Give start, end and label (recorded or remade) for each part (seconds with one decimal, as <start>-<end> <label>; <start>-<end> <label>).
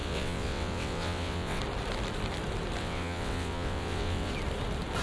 0.0-1.6 remade; 1.6-2.8 recorded; 2.8-4.3 remade; 4.3-5.0 recorded